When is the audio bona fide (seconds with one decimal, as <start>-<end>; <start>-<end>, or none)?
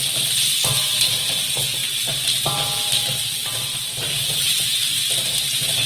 0.0-5.9